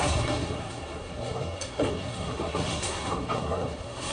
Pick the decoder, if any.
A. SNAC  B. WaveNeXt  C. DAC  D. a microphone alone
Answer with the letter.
A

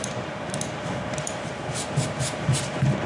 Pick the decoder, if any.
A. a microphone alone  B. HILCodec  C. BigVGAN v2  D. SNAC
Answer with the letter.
C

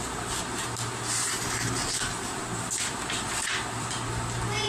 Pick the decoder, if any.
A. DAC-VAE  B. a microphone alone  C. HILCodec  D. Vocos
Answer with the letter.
B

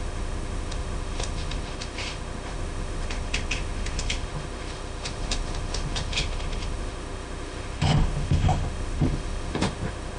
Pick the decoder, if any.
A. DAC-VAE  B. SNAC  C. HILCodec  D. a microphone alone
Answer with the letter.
A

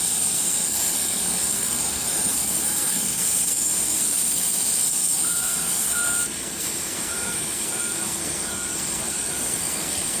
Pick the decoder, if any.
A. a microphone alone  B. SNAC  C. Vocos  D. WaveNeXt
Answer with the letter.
B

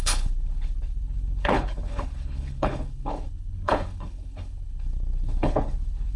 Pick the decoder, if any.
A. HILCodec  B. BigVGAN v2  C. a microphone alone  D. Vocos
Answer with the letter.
A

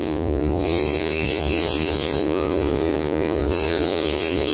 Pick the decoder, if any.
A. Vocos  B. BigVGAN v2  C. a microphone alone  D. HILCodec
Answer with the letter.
A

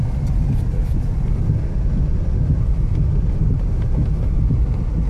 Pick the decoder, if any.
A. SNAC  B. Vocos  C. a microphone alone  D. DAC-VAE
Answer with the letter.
C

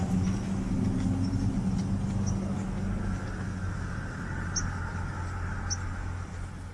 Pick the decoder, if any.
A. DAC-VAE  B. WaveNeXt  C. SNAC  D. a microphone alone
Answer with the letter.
D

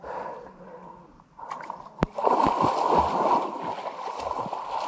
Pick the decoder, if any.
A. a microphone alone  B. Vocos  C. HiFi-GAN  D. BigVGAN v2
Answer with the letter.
A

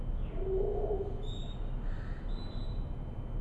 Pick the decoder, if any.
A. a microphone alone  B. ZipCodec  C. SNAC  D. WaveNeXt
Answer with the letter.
A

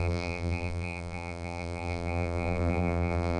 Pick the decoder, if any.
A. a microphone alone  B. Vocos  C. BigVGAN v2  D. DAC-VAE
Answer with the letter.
C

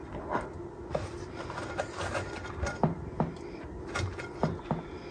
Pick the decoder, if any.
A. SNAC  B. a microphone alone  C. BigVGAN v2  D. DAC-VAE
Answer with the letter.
B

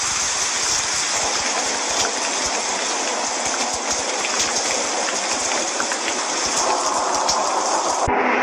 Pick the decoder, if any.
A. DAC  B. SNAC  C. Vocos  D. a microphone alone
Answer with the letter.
D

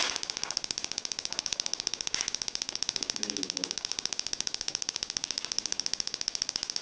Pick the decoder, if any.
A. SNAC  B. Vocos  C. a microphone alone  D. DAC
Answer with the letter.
D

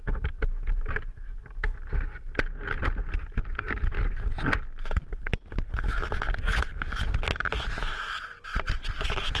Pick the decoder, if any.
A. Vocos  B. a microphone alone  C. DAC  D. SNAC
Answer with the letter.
B